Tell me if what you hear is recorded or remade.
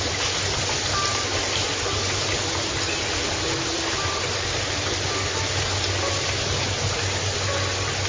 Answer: recorded